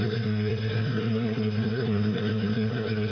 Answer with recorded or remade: remade